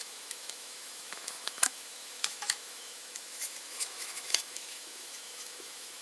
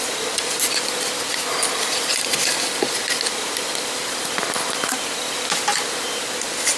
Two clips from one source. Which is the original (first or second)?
second